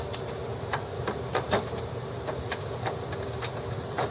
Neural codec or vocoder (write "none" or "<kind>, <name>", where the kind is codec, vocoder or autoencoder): none